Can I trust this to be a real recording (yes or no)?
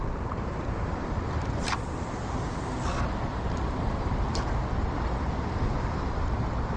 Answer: yes